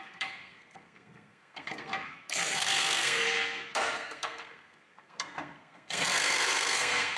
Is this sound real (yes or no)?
no